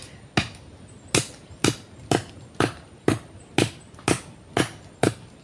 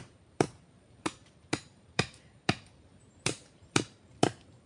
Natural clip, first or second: first